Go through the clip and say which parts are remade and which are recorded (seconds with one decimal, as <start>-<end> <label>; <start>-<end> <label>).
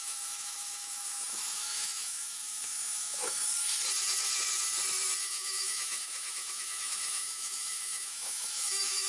0.0-3.5 remade; 3.5-5.2 recorded; 5.2-9.1 remade